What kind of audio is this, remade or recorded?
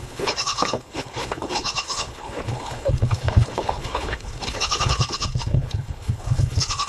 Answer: remade